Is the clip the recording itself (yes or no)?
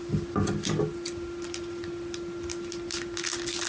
yes